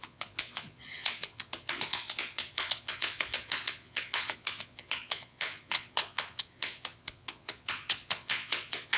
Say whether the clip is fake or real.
fake